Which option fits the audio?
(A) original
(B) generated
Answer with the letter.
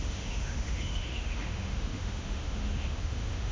B